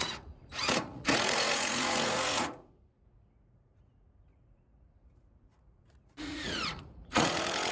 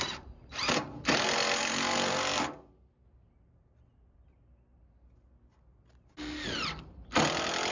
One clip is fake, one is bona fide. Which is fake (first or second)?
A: first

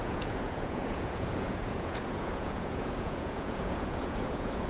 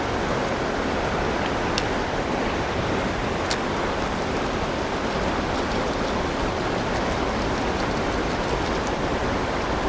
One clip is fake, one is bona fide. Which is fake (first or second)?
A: first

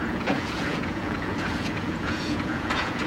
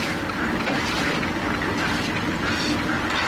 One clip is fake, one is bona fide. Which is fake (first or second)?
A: first